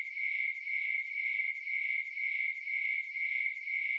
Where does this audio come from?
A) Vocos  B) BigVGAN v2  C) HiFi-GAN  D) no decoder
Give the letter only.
D